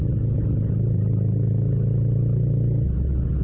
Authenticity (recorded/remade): recorded